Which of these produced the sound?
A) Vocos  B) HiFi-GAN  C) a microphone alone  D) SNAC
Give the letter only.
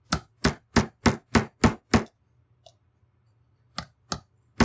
C